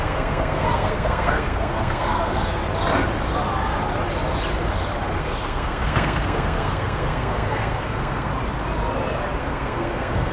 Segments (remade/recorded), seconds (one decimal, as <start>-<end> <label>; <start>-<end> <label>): 0.0-2.6 remade; 2.6-5.2 recorded; 5.2-8.3 remade; 8.3-9.4 recorded; 9.4-10.3 remade